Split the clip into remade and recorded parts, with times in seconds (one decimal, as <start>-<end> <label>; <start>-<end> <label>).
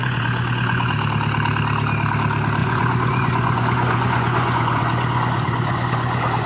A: 0.0-0.9 remade; 0.9-2.6 recorded; 2.6-6.5 remade